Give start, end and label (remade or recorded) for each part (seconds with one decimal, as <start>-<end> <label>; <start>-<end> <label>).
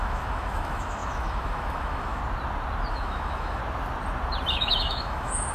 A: 0.0-2.2 remade; 2.2-2.9 recorded; 2.9-3.6 remade; 3.6-4.5 recorded; 4.5-5.5 remade